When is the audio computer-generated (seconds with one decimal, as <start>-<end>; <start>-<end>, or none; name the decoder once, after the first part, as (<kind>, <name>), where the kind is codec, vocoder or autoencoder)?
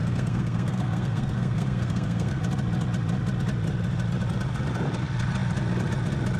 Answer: 0.0-2.4 (codec, SNAC)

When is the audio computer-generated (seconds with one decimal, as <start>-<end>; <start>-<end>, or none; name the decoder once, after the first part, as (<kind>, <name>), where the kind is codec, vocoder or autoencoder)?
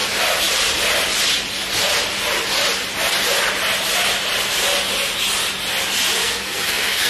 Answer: 6.2-7.1 (codec, SNAC)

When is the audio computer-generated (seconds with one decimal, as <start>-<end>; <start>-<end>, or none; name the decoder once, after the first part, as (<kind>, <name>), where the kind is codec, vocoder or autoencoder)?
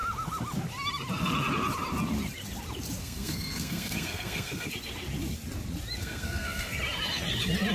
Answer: 3.0-4.7 (codec, SNAC); 6.0-6.8